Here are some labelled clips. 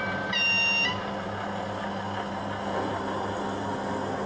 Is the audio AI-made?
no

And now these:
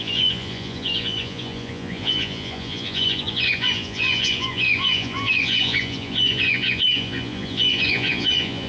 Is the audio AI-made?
yes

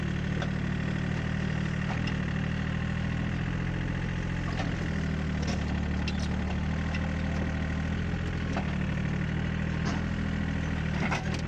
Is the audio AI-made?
no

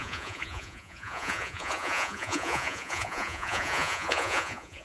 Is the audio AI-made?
yes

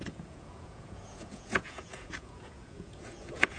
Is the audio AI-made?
yes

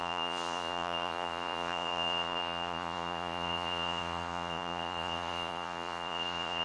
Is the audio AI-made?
yes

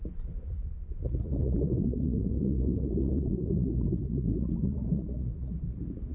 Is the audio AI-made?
yes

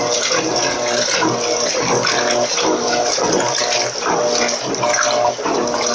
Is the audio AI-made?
no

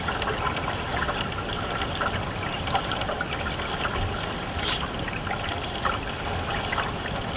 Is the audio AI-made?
no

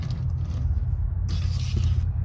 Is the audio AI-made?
no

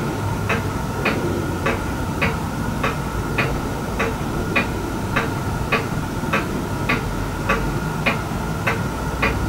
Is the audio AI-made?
no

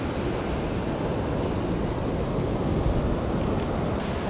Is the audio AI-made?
no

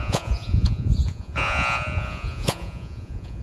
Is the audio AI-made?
yes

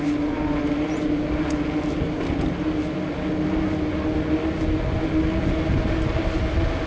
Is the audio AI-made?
no